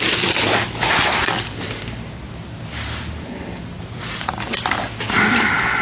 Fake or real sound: real